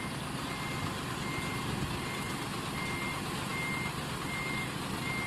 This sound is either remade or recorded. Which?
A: recorded